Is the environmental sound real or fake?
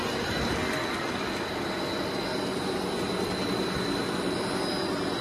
real